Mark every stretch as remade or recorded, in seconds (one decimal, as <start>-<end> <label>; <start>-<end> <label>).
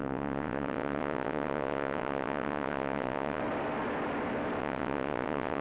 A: 0.0-3.4 remade; 3.4-4.6 recorded; 4.6-5.6 remade